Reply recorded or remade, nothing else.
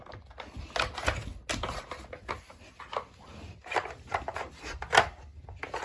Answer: recorded